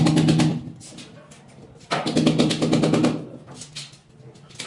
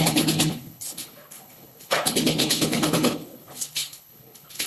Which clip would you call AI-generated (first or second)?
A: second